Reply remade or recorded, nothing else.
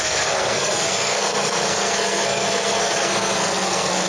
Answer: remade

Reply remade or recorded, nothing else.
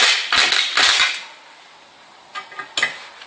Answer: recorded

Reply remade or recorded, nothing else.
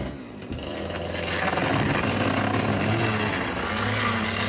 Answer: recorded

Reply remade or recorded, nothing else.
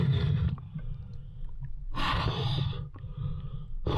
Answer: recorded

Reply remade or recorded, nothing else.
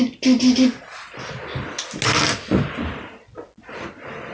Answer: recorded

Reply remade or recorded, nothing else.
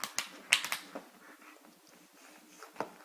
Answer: recorded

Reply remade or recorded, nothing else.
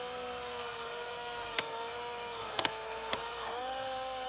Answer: remade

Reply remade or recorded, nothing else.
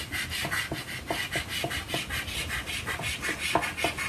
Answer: recorded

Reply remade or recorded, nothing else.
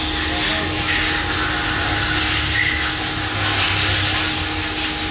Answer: recorded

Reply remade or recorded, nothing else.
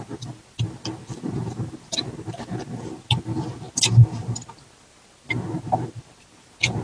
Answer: recorded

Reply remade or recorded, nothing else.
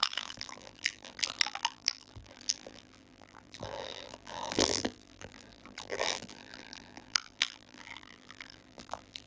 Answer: remade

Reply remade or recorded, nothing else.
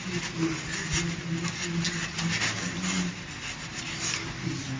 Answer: recorded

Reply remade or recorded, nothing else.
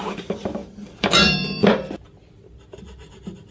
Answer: remade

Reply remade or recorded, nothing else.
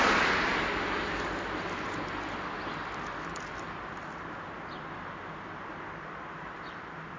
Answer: recorded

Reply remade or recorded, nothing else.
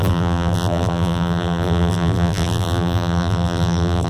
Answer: remade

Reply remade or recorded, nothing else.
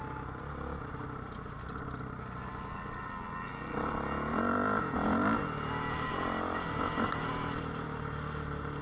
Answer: recorded